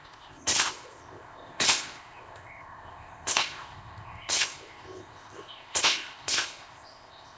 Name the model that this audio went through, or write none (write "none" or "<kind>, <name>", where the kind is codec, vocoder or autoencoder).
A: codec, ZipCodec